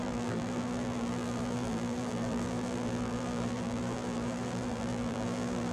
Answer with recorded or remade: remade